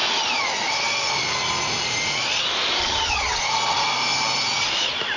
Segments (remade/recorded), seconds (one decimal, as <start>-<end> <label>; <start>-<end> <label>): 0.0-2.8 recorded; 2.8-3.4 remade; 3.4-5.2 recorded